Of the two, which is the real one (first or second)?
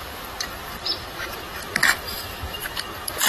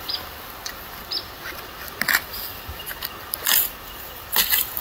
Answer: second